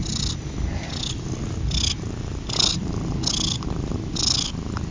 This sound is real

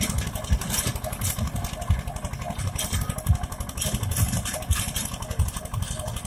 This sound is real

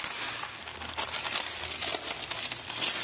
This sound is real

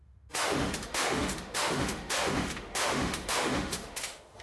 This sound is fake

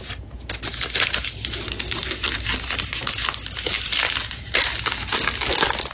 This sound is real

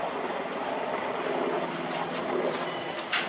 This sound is real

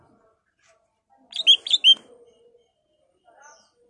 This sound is real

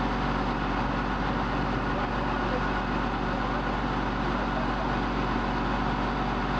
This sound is real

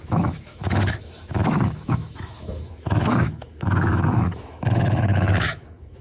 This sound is fake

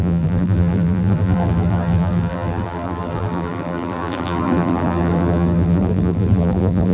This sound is fake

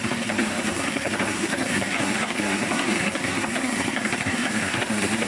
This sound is fake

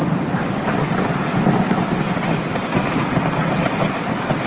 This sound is real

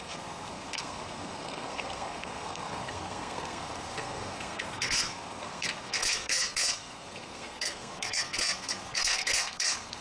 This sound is fake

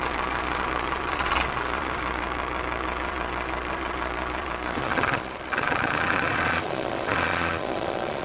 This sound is fake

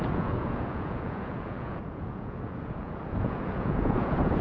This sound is fake